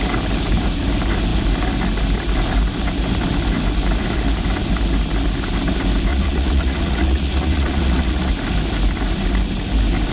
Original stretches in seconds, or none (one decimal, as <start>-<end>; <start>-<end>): 0.0-6.1; 8.3-10.1